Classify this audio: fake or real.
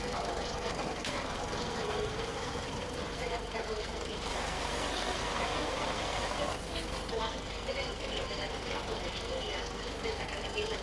fake